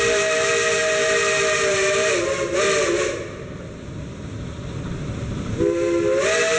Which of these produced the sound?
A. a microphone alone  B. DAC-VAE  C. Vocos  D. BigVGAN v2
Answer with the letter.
A